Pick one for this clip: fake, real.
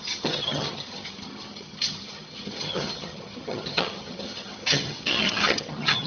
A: fake